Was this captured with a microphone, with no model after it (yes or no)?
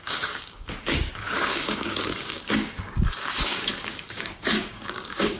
no